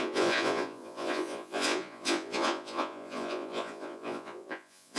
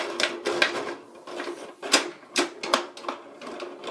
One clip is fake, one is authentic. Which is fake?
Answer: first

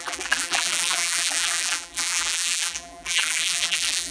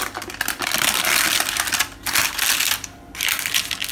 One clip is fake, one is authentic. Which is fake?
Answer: first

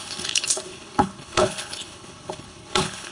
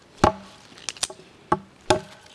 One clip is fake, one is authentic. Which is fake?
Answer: first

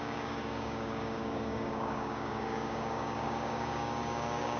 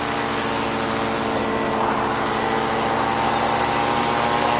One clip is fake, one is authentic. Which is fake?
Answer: first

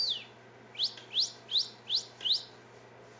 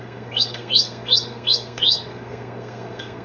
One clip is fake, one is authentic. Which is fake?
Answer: second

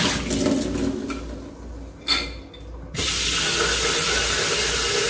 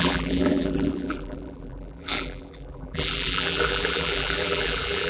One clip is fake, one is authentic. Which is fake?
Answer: second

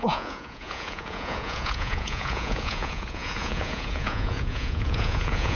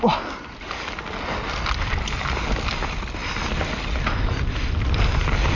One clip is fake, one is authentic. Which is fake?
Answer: first